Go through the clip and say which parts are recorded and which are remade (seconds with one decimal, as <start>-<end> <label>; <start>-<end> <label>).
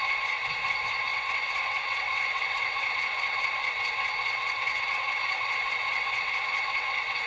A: 0.0-7.3 remade